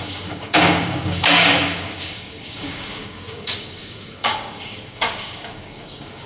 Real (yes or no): no